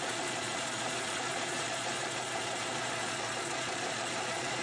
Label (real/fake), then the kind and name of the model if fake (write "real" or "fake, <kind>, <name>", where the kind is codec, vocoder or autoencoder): fake, vocoder, Vocos